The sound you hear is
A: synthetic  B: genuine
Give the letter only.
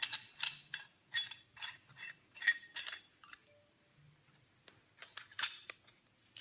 B